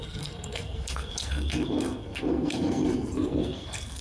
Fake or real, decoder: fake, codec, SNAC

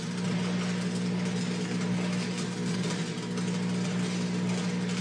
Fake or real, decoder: real